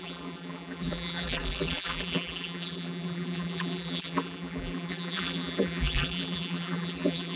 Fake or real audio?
fake